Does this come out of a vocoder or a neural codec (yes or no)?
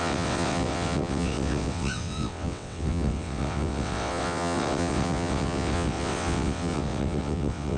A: yes